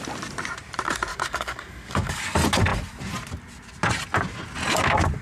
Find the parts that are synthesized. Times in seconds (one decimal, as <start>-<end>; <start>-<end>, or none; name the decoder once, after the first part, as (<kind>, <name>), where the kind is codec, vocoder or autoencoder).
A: 1.1-2.2 (codec, DAC)